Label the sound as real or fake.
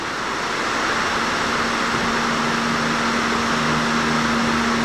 real